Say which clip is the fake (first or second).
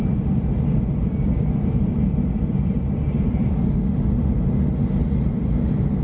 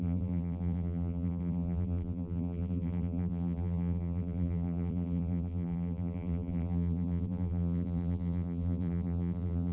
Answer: second